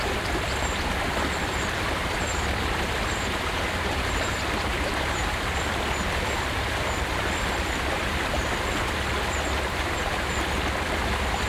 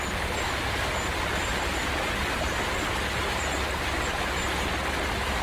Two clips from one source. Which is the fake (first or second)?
first